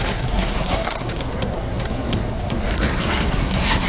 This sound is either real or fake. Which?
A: fake